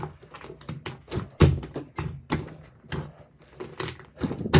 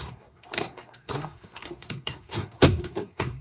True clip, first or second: first